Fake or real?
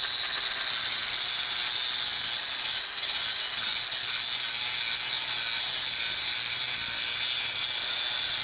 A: real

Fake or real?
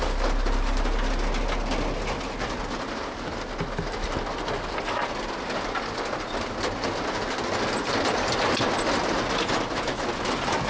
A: real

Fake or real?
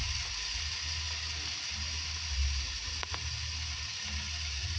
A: real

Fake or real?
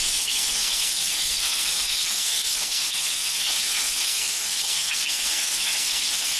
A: fake